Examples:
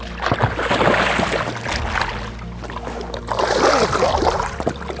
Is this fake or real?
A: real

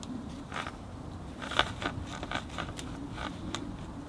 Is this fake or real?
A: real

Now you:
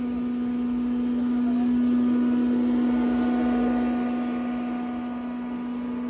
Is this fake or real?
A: real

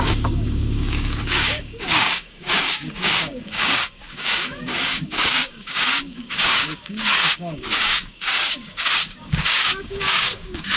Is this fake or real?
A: fake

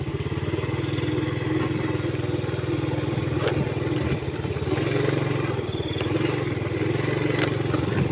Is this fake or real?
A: real